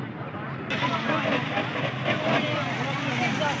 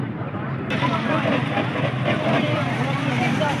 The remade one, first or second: second